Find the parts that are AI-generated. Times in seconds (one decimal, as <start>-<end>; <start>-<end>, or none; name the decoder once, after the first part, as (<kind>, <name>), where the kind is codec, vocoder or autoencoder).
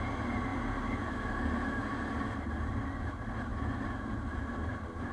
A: none